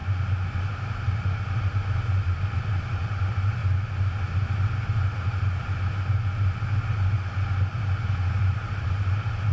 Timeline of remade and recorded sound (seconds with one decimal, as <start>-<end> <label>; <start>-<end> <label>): 0.0-2.2 recorded; 2.2-3.6 remade; 3.6-8.4 recorded; 8.4-9.5 remade